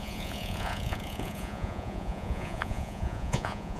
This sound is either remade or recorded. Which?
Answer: remade